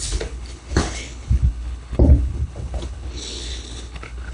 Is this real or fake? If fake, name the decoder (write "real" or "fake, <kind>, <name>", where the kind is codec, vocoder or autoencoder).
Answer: fake, codec, HILCodec